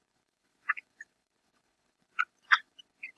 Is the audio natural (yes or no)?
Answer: no